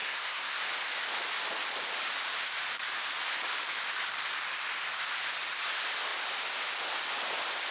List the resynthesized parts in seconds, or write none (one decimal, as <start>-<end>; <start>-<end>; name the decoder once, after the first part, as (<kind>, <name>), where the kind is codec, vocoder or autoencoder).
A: 0.0-0.6 (codec, SNAC)